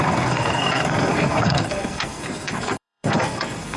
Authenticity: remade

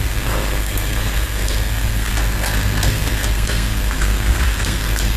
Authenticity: remade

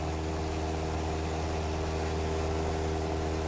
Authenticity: recorded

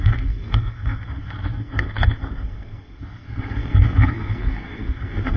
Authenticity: remade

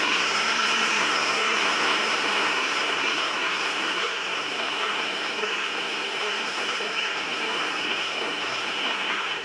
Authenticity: remade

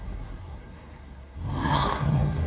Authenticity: remade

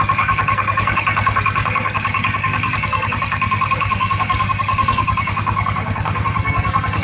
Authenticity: remade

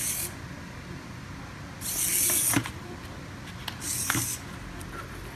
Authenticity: recorded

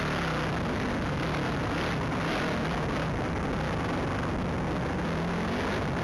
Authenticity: recorded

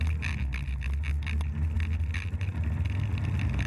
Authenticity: recorded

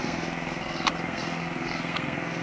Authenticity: remade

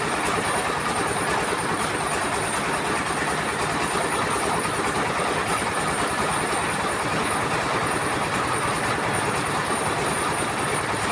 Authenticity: recorded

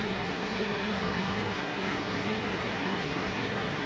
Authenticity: remade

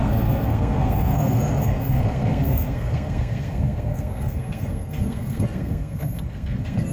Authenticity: remade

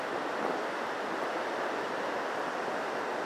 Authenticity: recorded